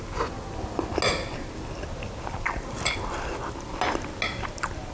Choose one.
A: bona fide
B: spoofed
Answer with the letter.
A